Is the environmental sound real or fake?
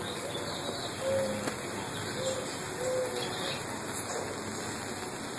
real